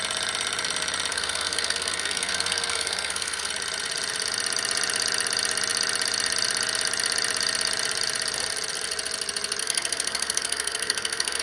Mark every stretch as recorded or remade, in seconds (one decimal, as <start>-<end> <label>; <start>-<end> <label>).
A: 0.0-1.1 recorded; 1.1-3.5 remade; 3.5-9.6 recorded; 9.6-11.4 remade